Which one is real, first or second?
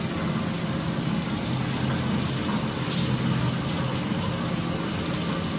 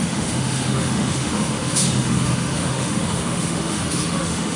first